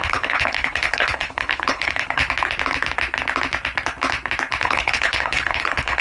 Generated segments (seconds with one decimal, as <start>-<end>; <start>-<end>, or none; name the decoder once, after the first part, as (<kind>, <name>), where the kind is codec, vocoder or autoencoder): 0.0-2.2 (codec, HILCodec); 4.6-6.0